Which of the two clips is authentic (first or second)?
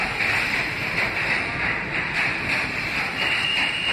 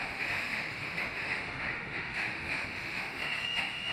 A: first